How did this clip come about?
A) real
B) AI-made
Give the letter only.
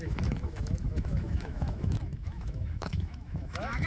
B